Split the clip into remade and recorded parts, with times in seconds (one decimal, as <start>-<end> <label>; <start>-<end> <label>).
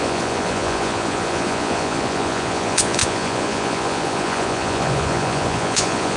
0.0-6.2 remade